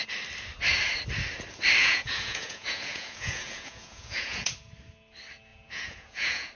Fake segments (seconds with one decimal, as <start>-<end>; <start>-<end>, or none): 1.8-4.5; 5.5-6.5